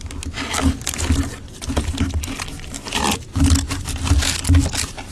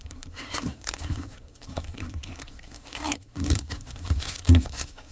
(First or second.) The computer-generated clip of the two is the second